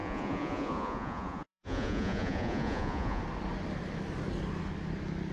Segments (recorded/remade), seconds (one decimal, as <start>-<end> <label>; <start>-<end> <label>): 0.0-3.2 remade; 3.2-5.3 recorded